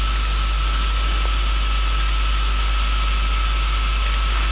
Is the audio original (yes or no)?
yes